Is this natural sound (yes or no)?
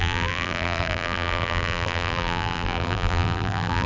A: no